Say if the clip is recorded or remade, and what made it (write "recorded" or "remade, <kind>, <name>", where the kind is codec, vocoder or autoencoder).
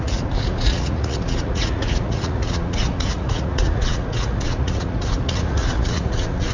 remade, vocoder, Vocos